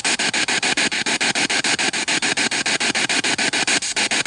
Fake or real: real